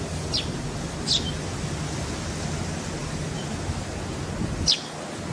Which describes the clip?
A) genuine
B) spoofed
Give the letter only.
A